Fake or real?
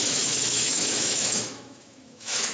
fake